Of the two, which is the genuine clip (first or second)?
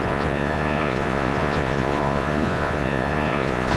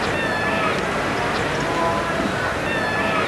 second